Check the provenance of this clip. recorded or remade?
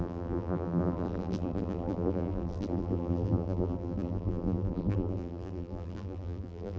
remade